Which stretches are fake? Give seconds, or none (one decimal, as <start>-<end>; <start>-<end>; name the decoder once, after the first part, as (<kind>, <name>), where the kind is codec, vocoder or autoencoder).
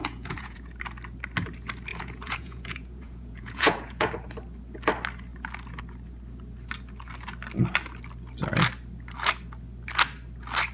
0.0-0.6 (vocoder, Vocos); 1.9-4.1